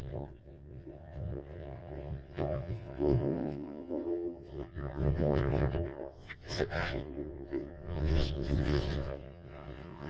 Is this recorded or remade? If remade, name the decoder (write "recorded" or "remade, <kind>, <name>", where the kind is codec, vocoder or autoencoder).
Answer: remade, vocoder, WaveNeXt